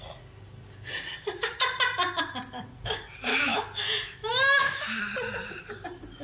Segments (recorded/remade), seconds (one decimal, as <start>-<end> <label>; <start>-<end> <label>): 0.0-3.3 recorded; 3.3-5.0 remade; 5.0-6.2 recorded